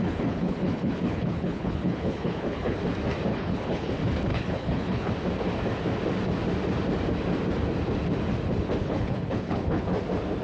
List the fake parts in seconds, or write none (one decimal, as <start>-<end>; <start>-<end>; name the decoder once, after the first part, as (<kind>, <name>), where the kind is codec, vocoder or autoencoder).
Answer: 0.0-2.8 (codec, HILCodec); 3.3-3.9; 4.3-5.1; 8.8-9.9